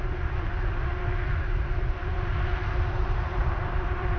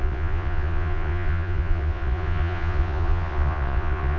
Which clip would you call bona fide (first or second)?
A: first